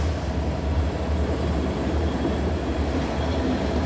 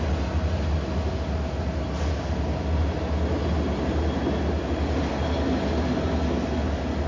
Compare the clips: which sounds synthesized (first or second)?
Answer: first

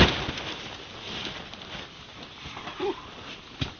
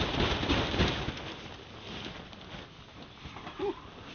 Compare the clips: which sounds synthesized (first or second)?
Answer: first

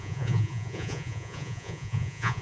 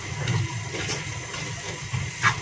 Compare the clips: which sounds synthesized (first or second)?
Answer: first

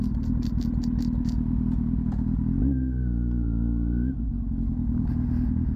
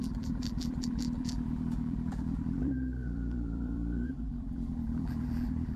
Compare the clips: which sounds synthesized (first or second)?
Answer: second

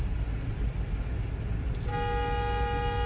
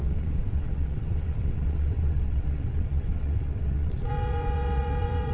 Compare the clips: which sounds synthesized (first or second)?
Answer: second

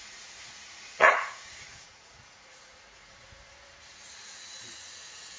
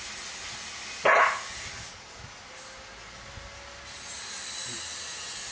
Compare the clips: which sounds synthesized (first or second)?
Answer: first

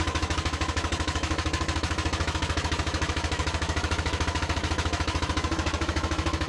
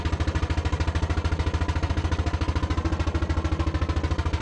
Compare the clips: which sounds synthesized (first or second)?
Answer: first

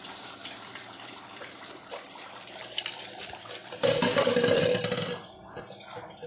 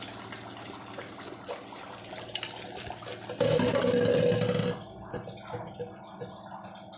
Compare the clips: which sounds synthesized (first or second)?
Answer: first